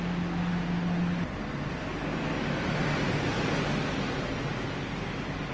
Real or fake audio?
real